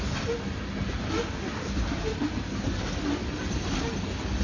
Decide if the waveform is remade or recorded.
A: recorded